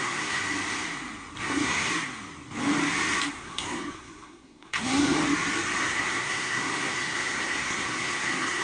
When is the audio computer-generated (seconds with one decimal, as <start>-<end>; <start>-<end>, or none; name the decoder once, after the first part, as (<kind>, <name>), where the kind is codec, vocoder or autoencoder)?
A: 0.0-0.4 (codec, SNAC); 1.4-1.9; 3.3-5.2; 5.8-8.6